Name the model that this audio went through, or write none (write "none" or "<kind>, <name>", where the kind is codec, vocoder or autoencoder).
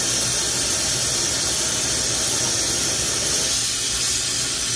none